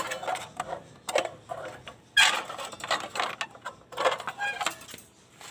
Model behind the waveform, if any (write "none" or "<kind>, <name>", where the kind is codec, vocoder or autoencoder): none